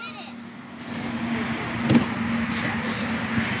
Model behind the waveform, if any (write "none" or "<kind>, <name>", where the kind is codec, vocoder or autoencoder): none